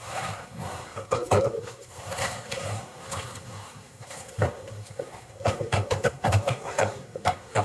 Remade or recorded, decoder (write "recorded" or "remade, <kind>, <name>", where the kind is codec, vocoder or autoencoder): remade, codec, SNAC